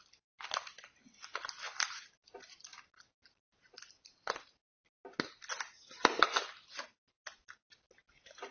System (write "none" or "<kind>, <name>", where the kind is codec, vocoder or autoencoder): none